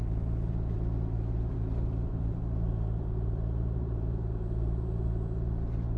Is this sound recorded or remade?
remade